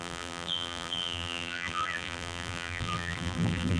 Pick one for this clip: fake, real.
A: fake